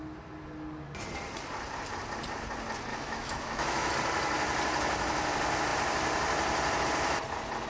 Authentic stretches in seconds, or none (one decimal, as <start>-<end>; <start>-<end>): 0.0-2.9; 3.9-7.7